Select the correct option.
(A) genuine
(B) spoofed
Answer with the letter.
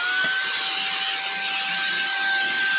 A